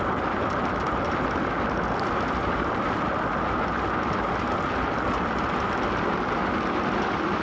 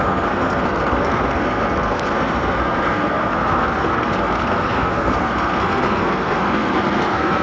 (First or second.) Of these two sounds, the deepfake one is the second